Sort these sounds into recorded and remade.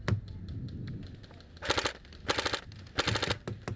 recorded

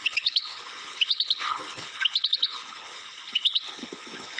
remade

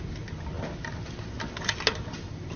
recorded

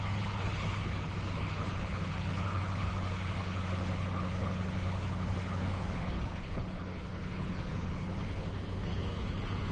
remade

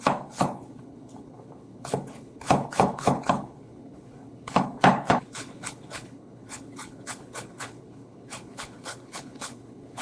remade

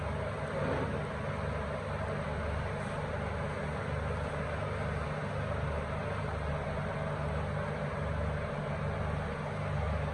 recorded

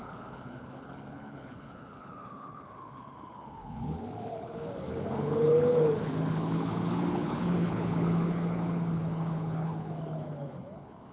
remade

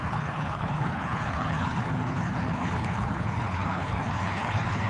remade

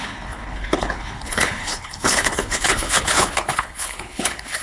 remade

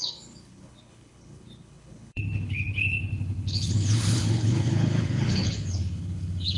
remade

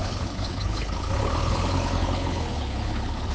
remade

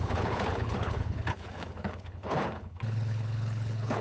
remade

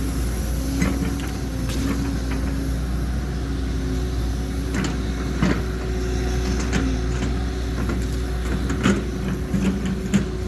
recorded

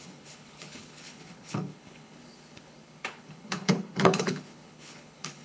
remade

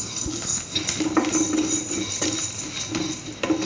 recorded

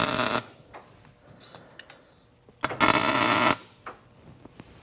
recorded